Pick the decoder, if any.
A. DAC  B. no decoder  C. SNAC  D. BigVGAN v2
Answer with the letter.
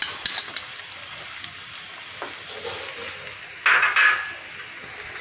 B